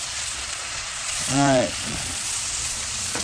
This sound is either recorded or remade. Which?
remade